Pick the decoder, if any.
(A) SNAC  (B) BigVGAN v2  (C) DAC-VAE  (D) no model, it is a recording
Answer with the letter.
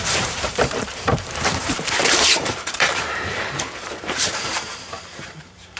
B